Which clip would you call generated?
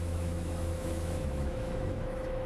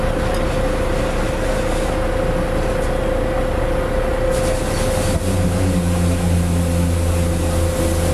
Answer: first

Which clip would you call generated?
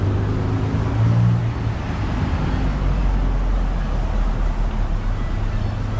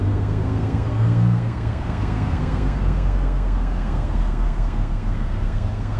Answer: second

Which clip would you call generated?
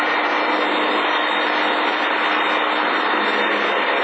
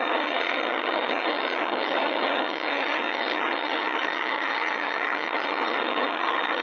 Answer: second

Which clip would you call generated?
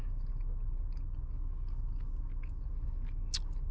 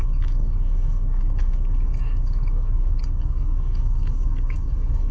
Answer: second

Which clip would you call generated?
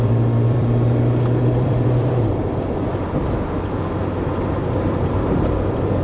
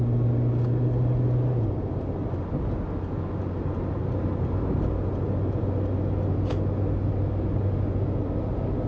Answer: first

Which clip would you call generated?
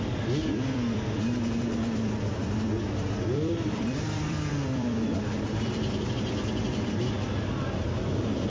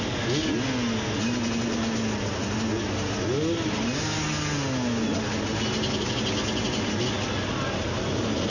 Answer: first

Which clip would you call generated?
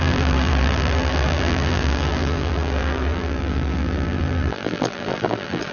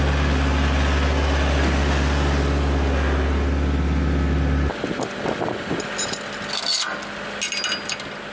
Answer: first